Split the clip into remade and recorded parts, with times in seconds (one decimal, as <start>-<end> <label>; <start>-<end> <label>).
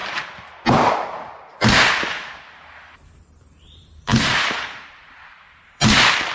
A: 0.0-0.7 recorded; 0.7-6.3 remade